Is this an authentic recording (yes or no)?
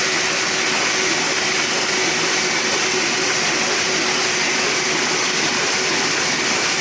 yes